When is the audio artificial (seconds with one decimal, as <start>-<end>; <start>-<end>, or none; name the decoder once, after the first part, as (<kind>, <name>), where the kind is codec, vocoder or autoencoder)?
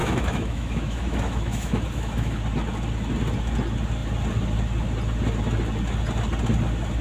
0.0-2.4 (autoencoder, DAC-VAE)